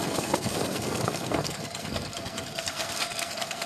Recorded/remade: remade